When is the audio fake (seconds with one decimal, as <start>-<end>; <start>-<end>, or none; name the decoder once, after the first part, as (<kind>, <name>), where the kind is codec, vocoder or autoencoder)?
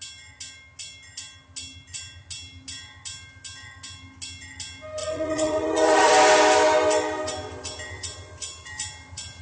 5.0-6.1 (vocoder, Vocos)